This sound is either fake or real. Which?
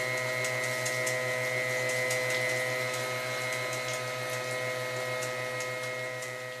real